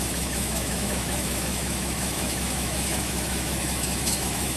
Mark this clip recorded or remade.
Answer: remade